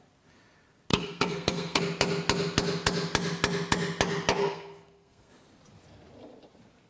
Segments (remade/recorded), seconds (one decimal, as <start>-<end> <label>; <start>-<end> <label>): 0.0-0.9 recorded; 0.9-1.8 remade; 1.8-4.4 recorded; 4.4-5.3 remade; 5.3-6.9 recorded